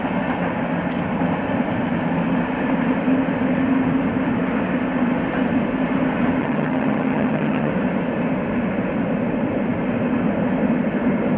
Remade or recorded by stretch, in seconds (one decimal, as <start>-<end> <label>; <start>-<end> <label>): 0.0-6.4 recorded; 6.4-7.7 remade; 7.7-11.4 recorded